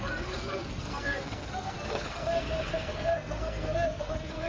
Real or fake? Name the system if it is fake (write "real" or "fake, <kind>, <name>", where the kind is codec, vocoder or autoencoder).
fake, codec, SNAC